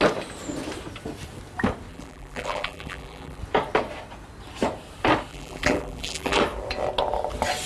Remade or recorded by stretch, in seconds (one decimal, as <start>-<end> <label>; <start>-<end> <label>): 0.0-1.9 recorded; 1.9-3.4 remade; 3.4-5.3 recorded; 5.3-6.4 remade; 6.4-7.7 recorded